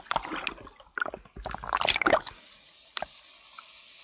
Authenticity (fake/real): real